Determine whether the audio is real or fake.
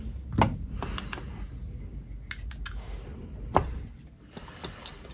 real